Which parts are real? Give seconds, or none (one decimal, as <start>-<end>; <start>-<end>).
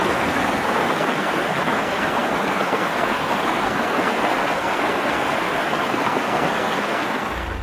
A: none